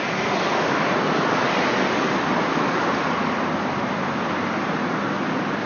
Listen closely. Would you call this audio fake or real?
real